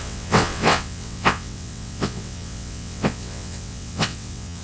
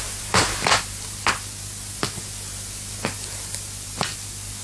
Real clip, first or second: second